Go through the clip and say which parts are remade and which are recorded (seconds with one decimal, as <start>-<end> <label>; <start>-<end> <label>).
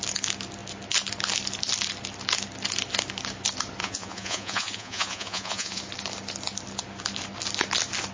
0.0-3.8 recorded; 3.8-5.8 remade; 5.8-8.1 recorded